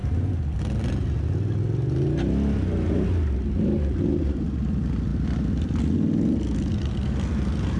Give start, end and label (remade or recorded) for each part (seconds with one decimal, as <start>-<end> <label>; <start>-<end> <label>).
0.0-7.8 recorded

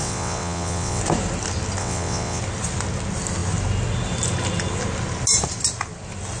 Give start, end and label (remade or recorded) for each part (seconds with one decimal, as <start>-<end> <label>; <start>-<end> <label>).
0.0-1.0 remade; 1.0-1.8 recorded; 1.8-2.4 remade; 2.4-6.4 recorded